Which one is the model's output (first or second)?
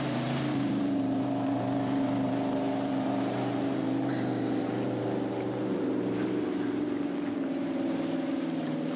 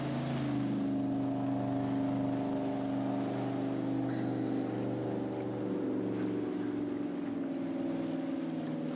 first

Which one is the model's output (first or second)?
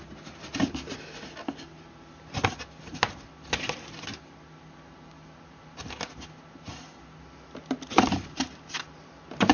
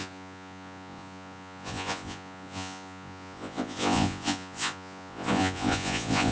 second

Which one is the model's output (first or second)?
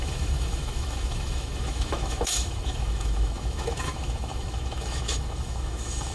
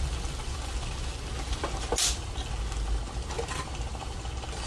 first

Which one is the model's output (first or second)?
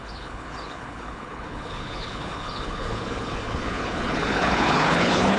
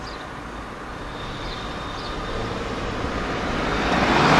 first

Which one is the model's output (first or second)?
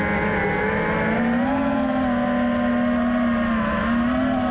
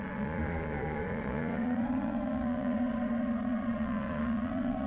second